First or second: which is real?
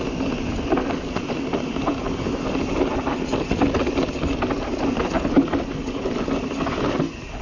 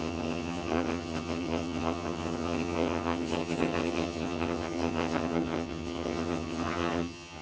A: first